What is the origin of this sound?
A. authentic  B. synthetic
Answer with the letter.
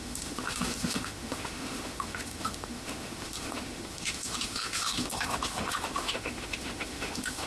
B